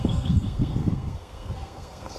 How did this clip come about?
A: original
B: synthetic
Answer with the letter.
B